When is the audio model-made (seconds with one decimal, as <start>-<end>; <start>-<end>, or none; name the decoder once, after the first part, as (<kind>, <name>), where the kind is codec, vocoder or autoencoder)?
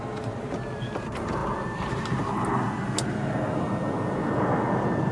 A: none